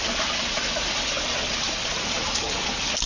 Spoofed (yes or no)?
no